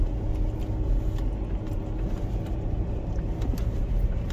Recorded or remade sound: recorded